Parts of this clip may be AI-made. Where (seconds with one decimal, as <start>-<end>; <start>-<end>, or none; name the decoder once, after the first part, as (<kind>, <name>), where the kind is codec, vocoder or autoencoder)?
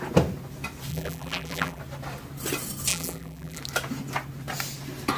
0.9-1.8 (vocoder, BigVGAN v2); 2.9-3.6